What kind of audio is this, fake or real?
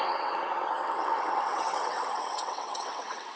fake